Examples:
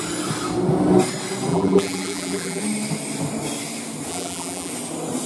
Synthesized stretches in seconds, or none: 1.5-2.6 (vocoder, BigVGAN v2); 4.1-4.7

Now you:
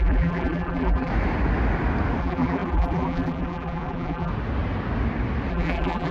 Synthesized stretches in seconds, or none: 0.0-1.1 (vocoder, BigVGAN v2); 2.2-4.3; 5.5-6.1

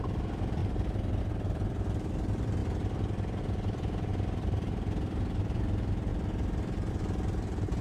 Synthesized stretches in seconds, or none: 0.0-6.1 (vocoder, BigVGAN v2); 6.9-7.8